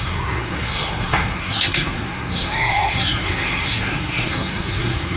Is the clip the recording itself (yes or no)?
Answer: no